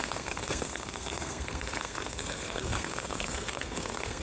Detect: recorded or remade remade